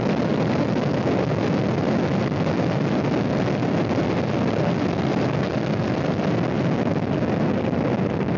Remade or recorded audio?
recorded